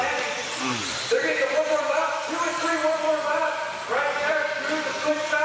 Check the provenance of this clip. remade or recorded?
remade